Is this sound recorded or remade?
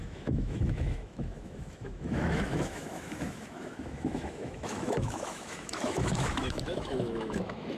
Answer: remade